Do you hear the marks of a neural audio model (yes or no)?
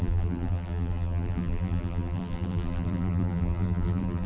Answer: yes